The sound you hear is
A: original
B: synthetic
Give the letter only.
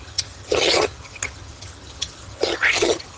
B